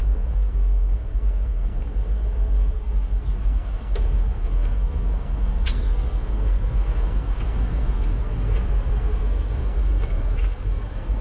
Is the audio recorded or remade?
remade